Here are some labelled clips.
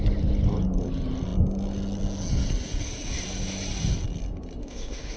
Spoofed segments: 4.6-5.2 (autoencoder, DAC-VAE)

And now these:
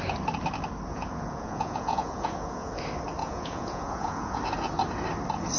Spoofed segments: 0.9-2.7 (vocoder, Vocos); 3.2-4.4

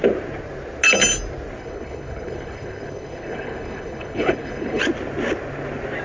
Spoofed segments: 1.6-4.8 (codec, HILCodec)